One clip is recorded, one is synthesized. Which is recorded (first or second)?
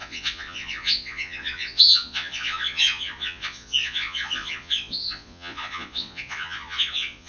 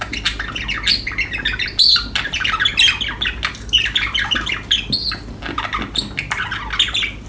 second